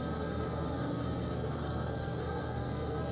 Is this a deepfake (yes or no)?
yes